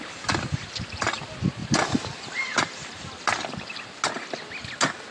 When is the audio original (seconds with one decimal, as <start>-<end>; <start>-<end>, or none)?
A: 0.0-5.1